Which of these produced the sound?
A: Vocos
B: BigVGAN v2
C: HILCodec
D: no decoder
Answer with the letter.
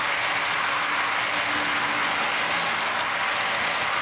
D